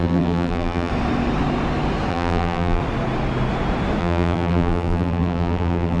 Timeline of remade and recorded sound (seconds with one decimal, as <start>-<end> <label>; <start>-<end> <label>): 0.0-0.9 remade; 0.9-2.1 recorded; 2.1-2.8 remade; 2.8-4.0 recorded; 4.0-6.0 remade